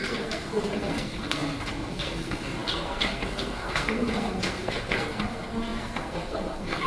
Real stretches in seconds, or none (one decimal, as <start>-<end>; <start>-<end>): none